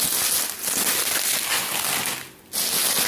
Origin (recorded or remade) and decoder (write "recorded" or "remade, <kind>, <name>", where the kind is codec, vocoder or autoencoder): recorded